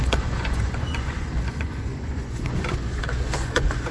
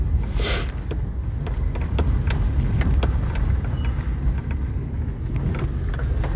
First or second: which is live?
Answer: second